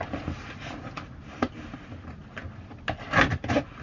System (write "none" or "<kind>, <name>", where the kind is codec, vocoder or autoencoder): none